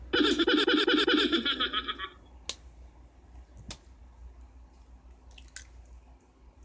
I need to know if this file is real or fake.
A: real